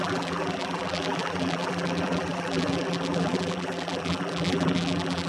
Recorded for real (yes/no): no